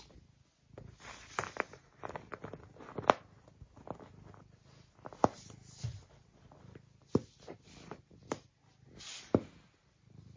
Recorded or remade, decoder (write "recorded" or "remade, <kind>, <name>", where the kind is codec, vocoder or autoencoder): recorded